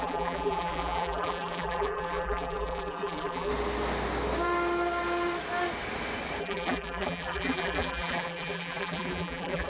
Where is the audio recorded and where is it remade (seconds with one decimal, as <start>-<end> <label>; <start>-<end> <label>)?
0.0-3.5 remade; 3.5-6.4 recorded; 6.4-9.7 remade

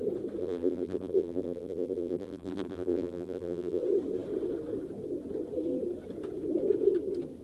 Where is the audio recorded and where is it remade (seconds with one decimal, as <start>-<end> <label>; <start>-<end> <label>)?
0.0-0.4 recorded; 0.4-3.8 remade; 3.8-7.4 recorded

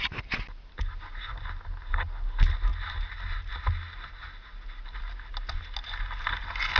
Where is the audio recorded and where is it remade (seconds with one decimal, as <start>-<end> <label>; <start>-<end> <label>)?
0.0-6.8 recorded

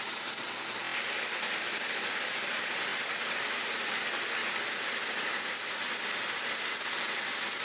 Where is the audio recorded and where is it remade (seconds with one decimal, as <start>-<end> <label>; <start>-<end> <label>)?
0.0-0.8 recorded; 0.8-1.8 remade; 1.8-2.9 recorded; 2.9-3.4 remade; 3.4-7.6 recorded